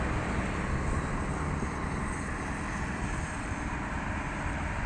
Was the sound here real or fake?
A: real